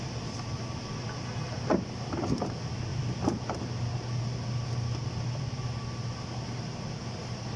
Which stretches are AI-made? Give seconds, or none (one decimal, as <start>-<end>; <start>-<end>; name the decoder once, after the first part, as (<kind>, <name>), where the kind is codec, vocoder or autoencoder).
none